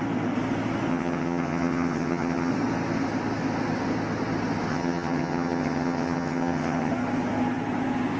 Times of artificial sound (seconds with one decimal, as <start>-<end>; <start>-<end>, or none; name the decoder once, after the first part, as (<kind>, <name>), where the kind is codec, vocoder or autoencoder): 0.9-2.5 (vocoder, HiFi-GAN); 4.7-6.9